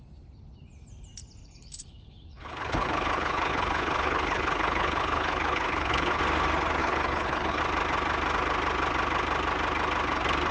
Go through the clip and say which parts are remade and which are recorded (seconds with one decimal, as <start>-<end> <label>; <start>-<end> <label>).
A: 0.0-1.4 recorded; 1.4-6.2 remade; 6.2-6.8 recorded; 6.8-7.6 remade; 7.6-10.5 recorded